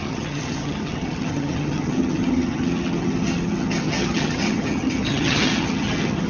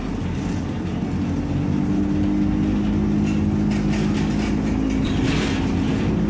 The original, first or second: second